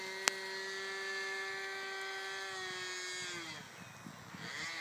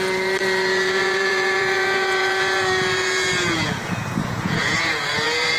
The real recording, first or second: first